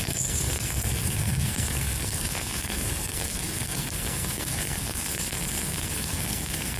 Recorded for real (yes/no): no